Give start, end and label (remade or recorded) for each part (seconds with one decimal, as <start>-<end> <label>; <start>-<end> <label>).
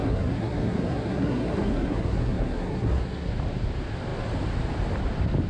0.0-3.3 remade; 3.3-5.5 recorded